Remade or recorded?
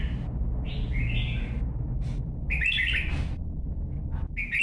recorded